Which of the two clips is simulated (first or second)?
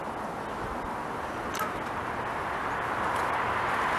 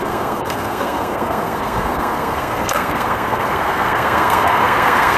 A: second